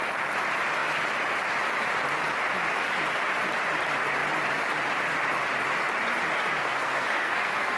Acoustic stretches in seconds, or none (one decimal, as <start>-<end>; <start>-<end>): 0.0-6.6